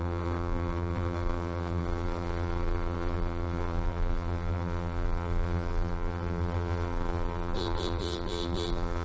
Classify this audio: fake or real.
fake